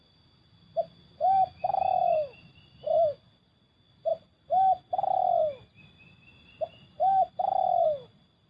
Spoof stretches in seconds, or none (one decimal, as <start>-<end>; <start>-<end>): 2.0-2.6